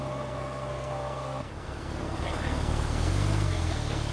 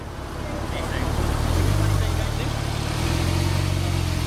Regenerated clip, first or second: first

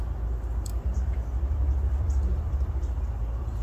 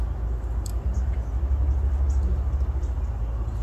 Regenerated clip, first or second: first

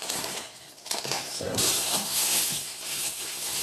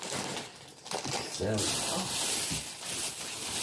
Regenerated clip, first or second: first